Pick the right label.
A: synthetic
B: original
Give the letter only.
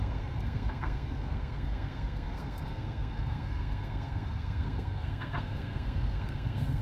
A